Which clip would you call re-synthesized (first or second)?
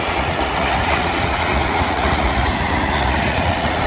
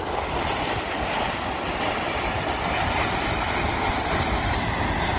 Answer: first